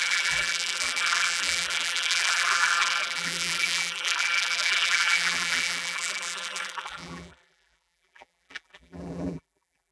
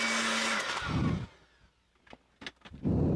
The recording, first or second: second